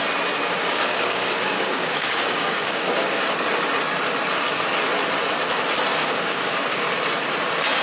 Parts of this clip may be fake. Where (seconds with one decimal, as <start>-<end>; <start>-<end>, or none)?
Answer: 0.6-3.3; 5.9-6.9